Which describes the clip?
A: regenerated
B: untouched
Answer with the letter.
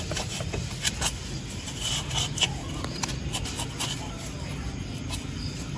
B